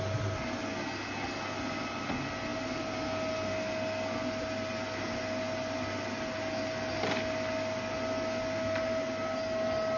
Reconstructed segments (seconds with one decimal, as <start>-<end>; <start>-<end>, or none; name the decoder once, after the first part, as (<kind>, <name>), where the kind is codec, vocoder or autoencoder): none

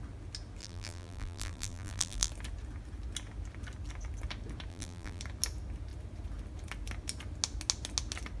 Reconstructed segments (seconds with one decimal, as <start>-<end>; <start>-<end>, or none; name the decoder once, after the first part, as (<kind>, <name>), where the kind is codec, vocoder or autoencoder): 0.6-2.3 (vocoder, BigVGAN v2); 4.7-5.2

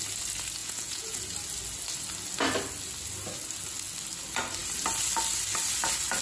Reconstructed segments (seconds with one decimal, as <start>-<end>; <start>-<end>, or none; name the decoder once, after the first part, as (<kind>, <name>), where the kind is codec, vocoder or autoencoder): 0.6-1.2 (vocoder, Vocos)

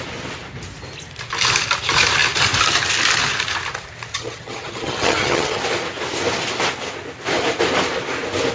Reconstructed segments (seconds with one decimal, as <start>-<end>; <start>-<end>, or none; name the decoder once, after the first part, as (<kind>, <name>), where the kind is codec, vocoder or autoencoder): 4.1-5.6 (vocoder, HiFi-GAN)